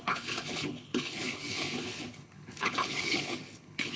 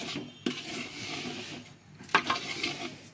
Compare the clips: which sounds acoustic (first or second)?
second